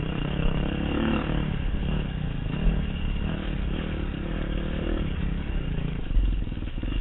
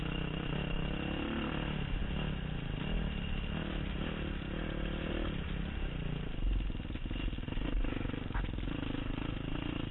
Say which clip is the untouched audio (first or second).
second